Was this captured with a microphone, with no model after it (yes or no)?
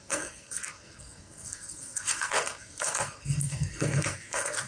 no